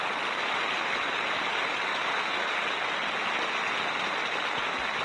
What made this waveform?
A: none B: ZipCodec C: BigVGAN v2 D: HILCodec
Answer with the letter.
A